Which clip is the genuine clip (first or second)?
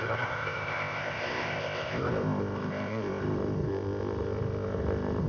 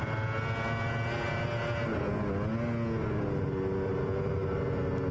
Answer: second